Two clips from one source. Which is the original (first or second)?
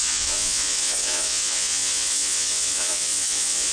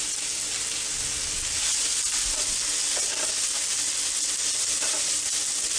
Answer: second